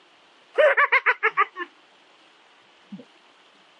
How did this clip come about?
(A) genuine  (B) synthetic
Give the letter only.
A